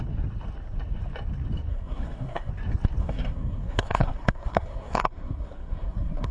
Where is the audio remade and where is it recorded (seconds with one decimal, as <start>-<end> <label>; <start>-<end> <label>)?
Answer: 0.0-1.7 recorded; 1.7-2.5 remade; 2.5-3.0 recorded; 3.0-6.3 remade